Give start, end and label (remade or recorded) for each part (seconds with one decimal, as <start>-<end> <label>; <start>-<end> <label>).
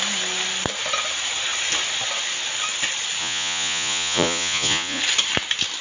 0.0-3.2 recorded; 3.2-5.0 remade; 5.0-5.8 recorded